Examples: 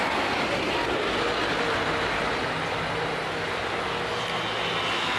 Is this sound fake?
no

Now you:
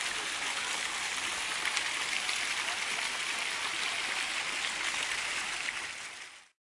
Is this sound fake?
no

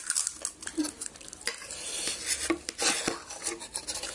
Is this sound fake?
no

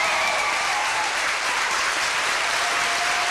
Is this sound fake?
yes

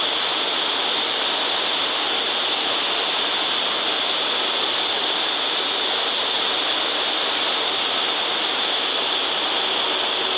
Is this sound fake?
no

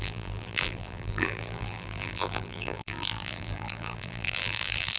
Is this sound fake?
yes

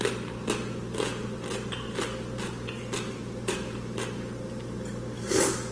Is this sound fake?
no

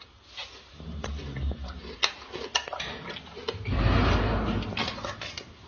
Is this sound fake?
no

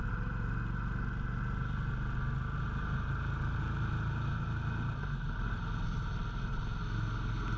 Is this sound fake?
no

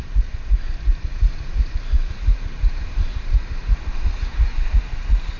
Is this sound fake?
yes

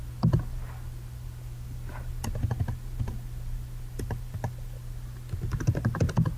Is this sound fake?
no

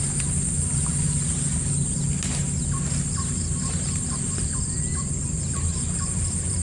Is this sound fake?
no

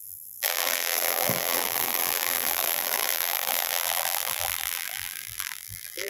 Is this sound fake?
yes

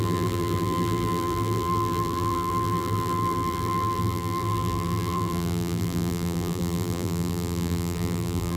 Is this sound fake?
yes